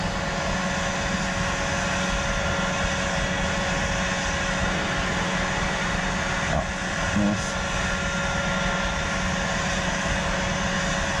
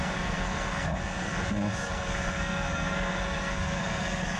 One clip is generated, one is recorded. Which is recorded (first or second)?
first